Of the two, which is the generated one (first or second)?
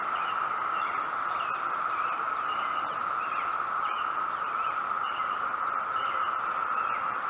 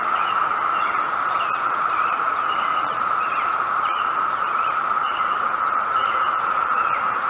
second